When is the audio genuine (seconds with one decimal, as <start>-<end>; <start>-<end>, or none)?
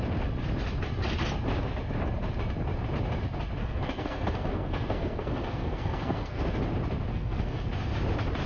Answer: 0.0-3.6; 6.4-7.1; 7.7-8.5